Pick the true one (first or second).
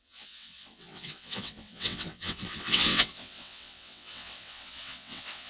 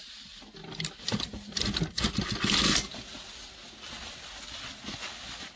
second